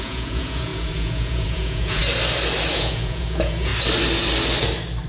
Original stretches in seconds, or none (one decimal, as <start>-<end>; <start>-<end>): 2.0-2.7; 3.7-5.1